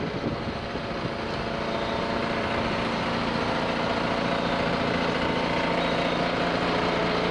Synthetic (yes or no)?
no